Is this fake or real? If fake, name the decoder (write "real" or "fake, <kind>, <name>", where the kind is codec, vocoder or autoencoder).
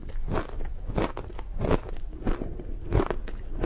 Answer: real